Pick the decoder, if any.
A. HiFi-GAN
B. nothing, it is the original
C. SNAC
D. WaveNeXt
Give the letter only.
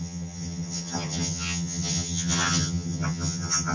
A